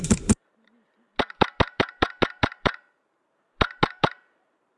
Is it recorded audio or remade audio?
remade